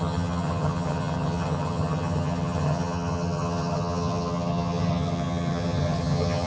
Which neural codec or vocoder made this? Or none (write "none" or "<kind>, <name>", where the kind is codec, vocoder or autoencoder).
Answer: vocoder, HiFi-GAN